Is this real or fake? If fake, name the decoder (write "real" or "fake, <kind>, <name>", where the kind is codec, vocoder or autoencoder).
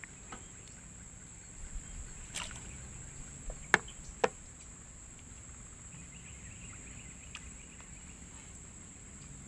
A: real